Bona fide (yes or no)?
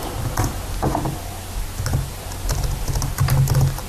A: yes